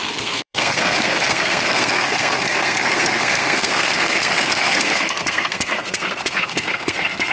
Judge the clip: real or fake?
fake